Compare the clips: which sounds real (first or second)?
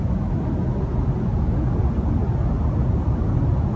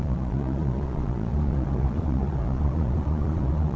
first